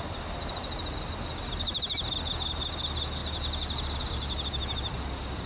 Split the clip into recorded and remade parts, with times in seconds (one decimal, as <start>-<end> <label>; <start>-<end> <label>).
0.0-5.5 recorded